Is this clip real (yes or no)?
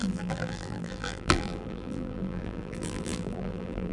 no